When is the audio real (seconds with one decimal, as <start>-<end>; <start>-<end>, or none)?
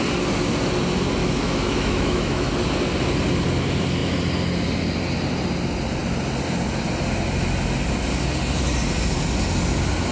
0.0-1.2; 2.5-10.1